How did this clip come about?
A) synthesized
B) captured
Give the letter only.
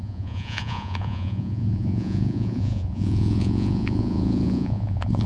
A